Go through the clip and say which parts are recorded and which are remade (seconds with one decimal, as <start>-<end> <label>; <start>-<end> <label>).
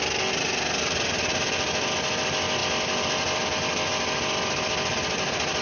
0.0-5.6 recorded